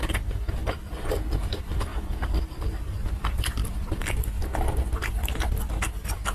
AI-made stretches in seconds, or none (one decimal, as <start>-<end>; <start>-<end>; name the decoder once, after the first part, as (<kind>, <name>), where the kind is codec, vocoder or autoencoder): 0.0-4.4 (vocoder, BigVGAN v2); 5.1-6.3